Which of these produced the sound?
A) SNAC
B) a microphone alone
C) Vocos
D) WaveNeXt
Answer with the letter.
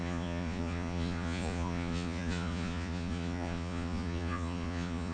C